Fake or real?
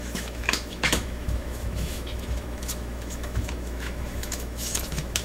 fake